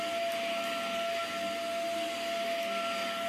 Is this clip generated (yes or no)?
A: no